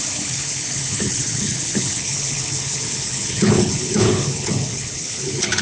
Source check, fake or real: fake